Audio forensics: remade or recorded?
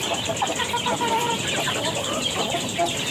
remade